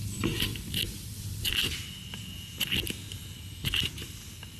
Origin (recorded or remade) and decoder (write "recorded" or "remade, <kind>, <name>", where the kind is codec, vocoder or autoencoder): remade, vocoder, BigVGAN v2